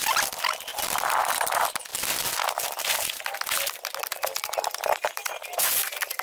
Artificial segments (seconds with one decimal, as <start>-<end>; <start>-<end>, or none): none